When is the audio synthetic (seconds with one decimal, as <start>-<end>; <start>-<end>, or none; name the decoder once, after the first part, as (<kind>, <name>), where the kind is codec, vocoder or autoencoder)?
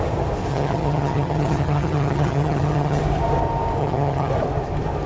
0.5-3.0 (vocoder, HiFi-GAN); 3.8-4.3